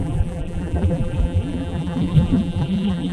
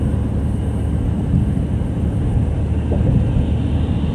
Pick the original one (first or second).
second